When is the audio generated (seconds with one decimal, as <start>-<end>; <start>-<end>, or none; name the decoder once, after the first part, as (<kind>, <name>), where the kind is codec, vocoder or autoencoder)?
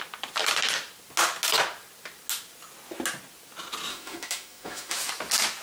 3.9-5.1 (autoencoder, DAC-VAE)